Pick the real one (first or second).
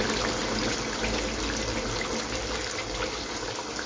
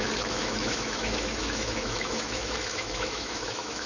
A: first